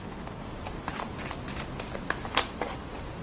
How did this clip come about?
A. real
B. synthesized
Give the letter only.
A